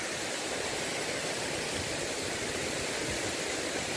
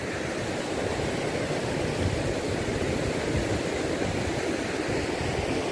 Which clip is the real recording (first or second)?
second